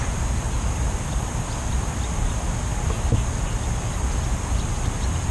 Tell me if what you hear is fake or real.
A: fake